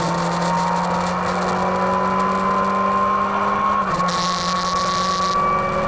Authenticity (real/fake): real